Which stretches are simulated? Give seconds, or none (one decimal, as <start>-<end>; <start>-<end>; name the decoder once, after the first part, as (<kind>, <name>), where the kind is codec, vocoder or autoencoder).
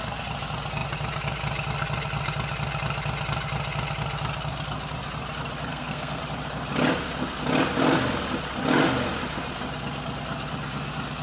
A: 5.7-6.2 (codec, SNAC)